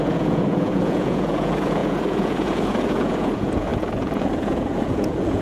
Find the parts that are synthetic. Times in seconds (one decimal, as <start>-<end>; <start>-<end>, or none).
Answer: 0.0-5.4